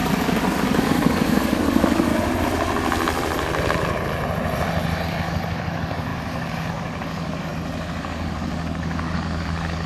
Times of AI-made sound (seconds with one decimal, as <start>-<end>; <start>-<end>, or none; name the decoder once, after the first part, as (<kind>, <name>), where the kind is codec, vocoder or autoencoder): 0.0-2.1 (codec, DAC); 5.0-7.5; 8.0-9.9